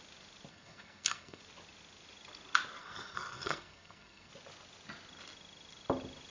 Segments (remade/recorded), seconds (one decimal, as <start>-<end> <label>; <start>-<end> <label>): 0.0-0.5 recorded; 0.5-1.4 remade; 1.4-2.8 recorded; 2.8-4.3 remade; 4.3-6.3 recorded